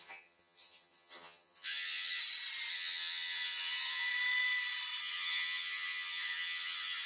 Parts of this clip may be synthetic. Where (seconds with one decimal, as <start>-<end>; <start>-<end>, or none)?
0.0-2.2; 2.7-4.1; 5.0-7.1